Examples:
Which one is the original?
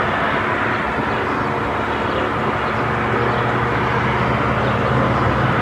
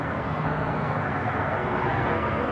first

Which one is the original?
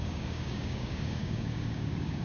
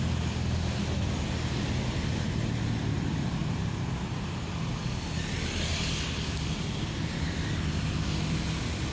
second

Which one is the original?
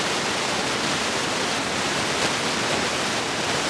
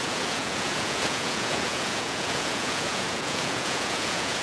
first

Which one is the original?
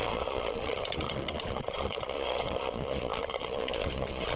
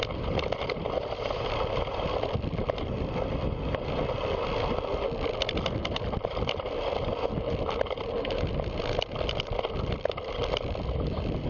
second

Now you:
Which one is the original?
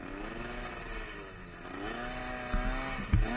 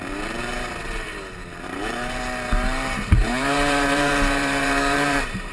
first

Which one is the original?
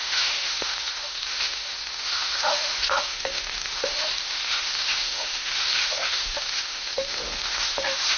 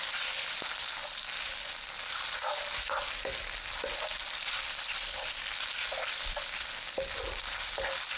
second